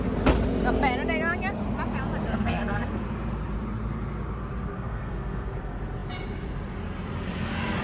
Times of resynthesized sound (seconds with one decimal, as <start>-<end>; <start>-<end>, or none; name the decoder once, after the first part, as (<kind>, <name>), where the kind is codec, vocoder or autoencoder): 2.3-3.0 (codec, SNAC); 4.7-5.6

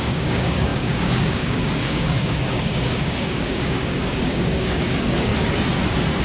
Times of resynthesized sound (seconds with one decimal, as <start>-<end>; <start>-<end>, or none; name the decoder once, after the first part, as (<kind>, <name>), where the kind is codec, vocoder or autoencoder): 0.0-5.3 (codec, DAC)

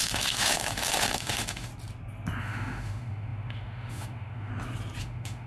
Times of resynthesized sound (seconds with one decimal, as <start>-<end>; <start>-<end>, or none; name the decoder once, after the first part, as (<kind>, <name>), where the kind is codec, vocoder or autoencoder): 0.0-1.7 (autoencoder, DAC-VAE); 2.4-4.5; 5.0-5.5